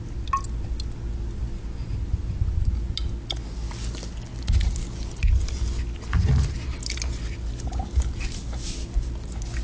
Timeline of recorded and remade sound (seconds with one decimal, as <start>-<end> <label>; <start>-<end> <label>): 0.0-9.6 recorded